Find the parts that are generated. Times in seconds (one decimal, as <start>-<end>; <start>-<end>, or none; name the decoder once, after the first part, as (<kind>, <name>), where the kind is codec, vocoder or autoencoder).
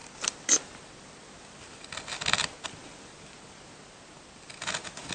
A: none